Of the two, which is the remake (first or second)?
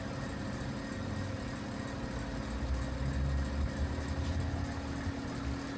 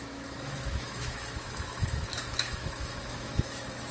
second